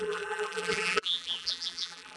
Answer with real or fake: fake